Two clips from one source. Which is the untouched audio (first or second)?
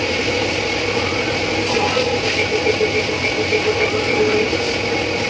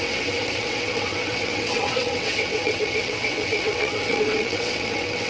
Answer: first